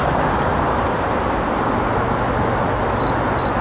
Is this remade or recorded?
recorded